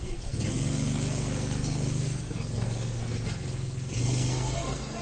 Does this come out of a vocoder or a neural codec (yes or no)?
yes